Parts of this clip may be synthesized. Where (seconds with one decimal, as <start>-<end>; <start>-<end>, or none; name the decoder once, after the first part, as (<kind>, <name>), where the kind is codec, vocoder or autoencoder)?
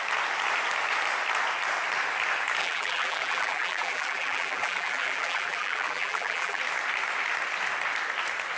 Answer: 2.6-6.6 (vocoder, BigVGAN v2)